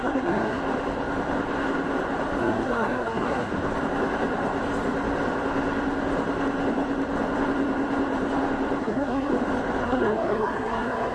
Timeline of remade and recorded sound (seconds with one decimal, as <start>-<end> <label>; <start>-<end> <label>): 0.0-0.6 remade; 0.6-2.4 recorded; 2.4-3.5 remade; 3.5-8.8 recorded; 8.8-9.3 remade; 9.3-9.8 recorded; 9.8-11.1 remade